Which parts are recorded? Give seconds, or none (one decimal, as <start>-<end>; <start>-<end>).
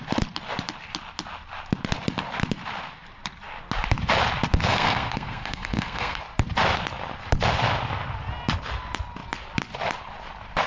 0.0-4.7; 6.2-10.7